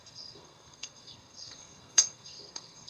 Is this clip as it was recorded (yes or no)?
no